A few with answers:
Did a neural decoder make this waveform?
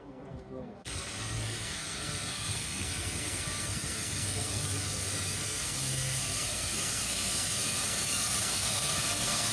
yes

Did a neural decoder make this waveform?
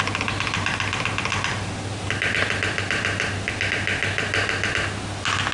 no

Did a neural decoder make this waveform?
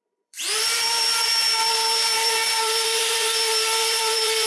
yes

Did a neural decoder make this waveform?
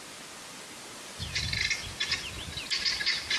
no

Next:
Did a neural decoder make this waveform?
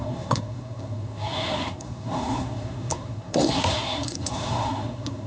yes